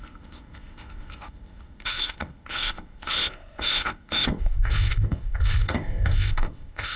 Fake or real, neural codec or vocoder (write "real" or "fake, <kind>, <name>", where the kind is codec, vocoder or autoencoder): fake, codec, ZipCodec